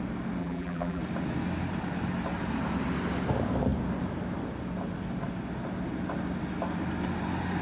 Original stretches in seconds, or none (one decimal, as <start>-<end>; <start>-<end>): 0.0-0.4; 1.0-7.6